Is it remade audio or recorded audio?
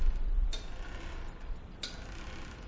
recorded